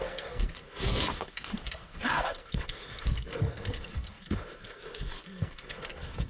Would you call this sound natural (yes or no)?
no